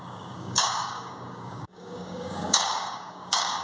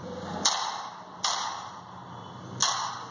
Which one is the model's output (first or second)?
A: first